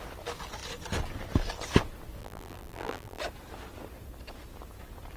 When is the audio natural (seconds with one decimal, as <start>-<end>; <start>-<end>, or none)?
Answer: 0.0-2.2; 3.2-5.2